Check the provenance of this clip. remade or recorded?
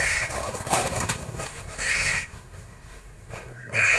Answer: remade